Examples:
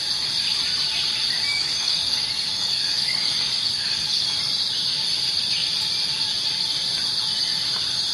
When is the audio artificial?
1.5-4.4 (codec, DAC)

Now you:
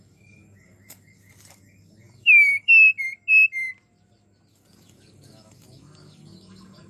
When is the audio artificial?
0.0-2.9 (codec, DAC); 4.5-6.9

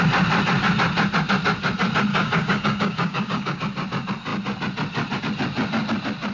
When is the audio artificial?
2.1-3.6 (codec, DAC)

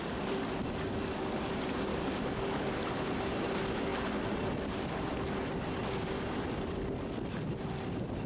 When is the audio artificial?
1.9-2.6 (codec, DAC)